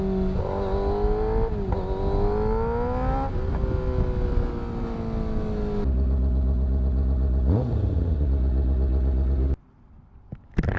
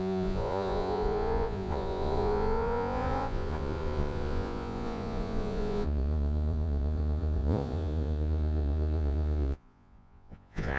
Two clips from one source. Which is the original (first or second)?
first